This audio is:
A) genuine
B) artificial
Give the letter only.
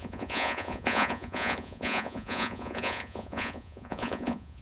B